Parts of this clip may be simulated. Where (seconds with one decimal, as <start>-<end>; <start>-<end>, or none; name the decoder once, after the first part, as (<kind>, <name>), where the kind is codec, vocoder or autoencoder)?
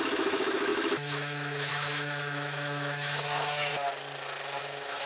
0.0-3.7 (autoencoder, DAC-VAE); 4.6-5.1